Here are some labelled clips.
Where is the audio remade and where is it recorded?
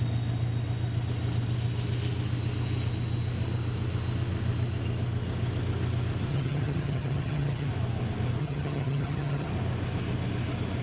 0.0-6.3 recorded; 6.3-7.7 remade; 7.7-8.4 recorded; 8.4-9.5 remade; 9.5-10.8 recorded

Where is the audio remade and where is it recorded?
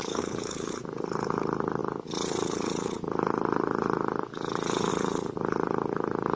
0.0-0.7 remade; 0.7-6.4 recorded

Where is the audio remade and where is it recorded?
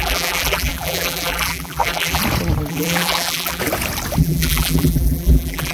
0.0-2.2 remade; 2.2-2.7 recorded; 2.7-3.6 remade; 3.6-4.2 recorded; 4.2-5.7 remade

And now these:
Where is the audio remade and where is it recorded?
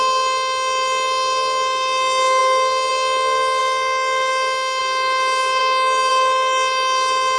0.0-5.6 recorded; 5.6-6.1 remade; 6.1-7.4 recorded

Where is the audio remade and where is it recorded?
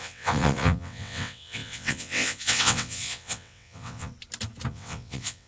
0.0-4.1 remade; 4.1-4.7 recorded; 4.7-5.5 remade